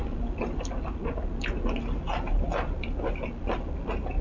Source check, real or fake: real